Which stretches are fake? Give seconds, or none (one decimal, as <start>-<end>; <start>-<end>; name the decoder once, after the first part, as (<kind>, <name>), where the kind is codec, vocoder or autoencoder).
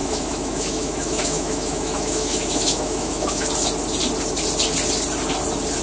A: 0.0-3.5 (autoencoder, DAC-VAE)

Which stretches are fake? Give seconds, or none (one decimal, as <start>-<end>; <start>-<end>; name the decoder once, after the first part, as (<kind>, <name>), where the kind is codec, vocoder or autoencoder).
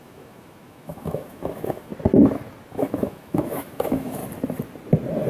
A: 0.0-1.9 (autoencoder, DAC-VAE); 2.7-4.2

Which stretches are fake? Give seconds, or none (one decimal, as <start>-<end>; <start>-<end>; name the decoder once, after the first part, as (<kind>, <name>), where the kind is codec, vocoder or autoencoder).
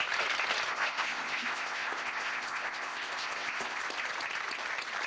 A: 0.7-3.8 (codec, ZipCodec)